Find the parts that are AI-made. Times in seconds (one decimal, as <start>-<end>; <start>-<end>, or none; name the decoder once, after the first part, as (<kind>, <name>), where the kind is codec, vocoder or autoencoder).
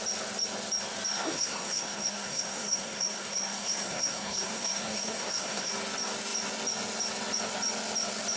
1.1-5.7 (codec, SNAC)